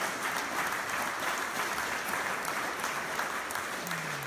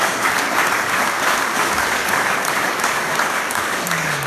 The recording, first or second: first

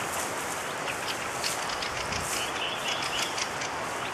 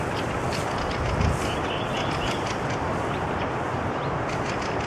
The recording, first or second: first